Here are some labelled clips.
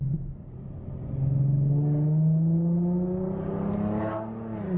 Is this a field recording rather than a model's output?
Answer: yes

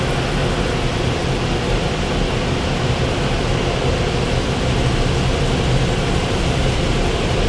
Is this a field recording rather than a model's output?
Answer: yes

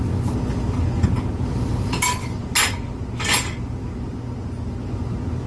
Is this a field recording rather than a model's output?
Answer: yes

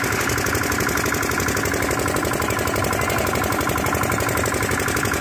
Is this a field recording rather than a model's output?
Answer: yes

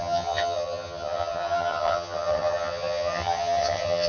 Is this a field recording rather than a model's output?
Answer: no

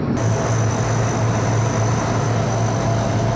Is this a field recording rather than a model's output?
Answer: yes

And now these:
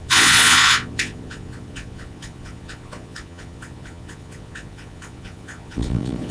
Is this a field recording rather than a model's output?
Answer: no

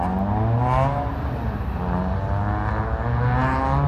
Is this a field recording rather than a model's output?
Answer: yes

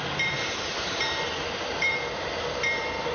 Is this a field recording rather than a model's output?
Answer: no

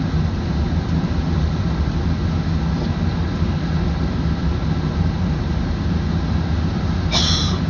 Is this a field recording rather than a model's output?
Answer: yes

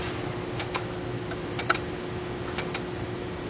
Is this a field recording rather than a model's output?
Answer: yes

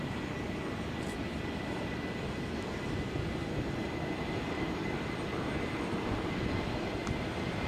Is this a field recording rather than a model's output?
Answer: yes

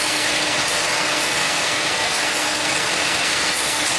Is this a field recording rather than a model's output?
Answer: no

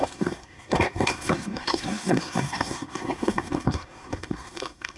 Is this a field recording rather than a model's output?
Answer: no